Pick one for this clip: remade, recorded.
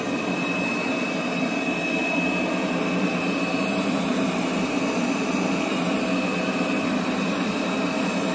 recorded